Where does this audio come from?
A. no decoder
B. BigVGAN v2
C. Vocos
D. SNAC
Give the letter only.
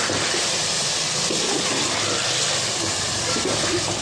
A